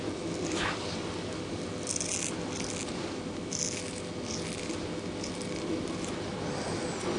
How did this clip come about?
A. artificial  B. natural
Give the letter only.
B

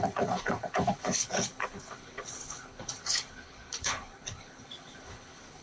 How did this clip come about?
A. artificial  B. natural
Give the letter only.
A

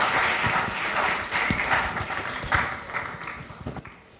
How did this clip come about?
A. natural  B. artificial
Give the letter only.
A